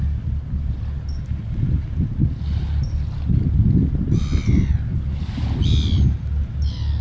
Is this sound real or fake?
real